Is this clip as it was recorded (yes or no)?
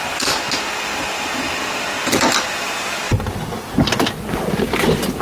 yes